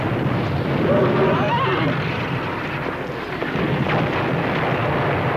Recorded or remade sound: recorded